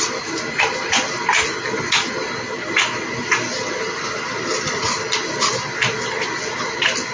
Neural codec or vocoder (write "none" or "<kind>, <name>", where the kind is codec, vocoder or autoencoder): none